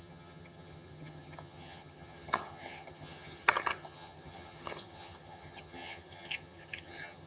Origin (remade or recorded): remade